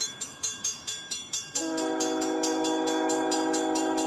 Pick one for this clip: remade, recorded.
remade